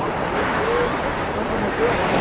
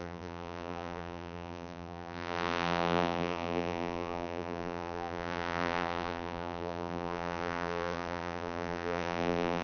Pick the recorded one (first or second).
first